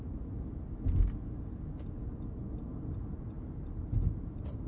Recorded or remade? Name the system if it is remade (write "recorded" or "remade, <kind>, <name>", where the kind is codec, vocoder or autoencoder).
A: recorded